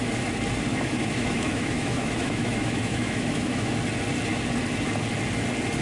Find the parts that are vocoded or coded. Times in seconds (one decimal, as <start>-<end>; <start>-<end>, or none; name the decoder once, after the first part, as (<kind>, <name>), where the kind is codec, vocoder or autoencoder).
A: 0.7-3.7 (autoencoder, DAC-VAE)